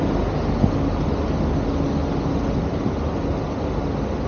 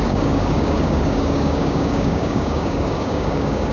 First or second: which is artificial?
second